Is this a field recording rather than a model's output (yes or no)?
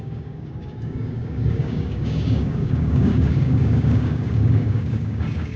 no